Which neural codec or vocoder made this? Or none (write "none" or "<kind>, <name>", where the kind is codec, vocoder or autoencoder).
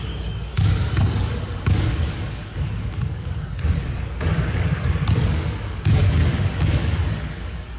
codec, DAC